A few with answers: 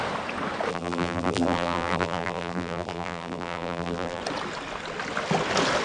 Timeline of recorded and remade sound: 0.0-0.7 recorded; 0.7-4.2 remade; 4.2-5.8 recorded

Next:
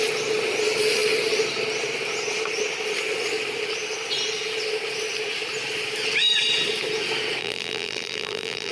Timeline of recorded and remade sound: 0.0-7.4 recorded; 7.4-8.7 remade

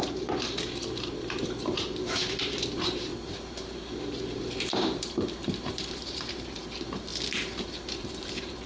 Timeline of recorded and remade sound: 0.0-7.1 remade; 7.1-7.6 recorded; 7.6-8.7 remade